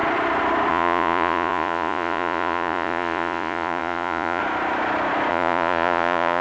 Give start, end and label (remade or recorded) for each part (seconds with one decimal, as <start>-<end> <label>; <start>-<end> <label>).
0.0-0.7 recorded; 0.7-4.4 remade; 4.4-5.3 recorded; 5.3-6.4 remade